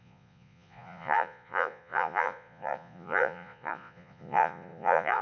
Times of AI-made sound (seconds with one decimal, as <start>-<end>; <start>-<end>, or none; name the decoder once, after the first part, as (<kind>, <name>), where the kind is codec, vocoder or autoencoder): 0.0-5.2 (vocoder, Vocos)